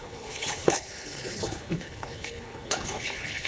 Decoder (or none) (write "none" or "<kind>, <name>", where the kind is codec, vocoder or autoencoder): codec, HILCodec